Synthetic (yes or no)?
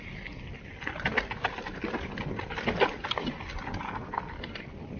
no